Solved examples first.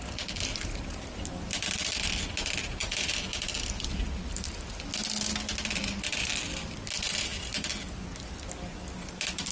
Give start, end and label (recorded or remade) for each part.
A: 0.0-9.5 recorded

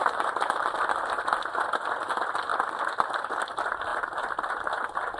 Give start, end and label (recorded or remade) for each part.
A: 0.0-0.7 remade; 0.7-5.2 recorded

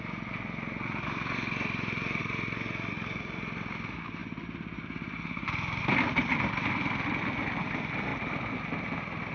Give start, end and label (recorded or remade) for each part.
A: 0.0-9.3 recorded

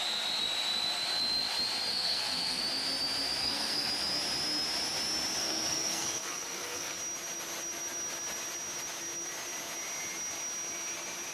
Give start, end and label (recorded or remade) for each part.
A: 0.0-1.9 recorded; 1.9-2.6 remade; 2.6-3.4 recorded; 3.4-3.9 remade; 3.9-5.4 recorded; 5.4-7.0 remade; 7.0-11.3 recorded